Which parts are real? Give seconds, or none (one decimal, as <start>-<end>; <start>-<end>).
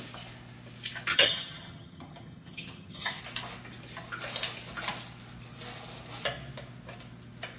0.0-1.1; 3.2-7.6